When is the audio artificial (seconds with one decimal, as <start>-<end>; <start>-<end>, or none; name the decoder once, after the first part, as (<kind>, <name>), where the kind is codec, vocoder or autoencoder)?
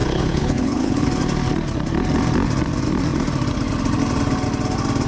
0.0-1.1 (codec, HILCodec)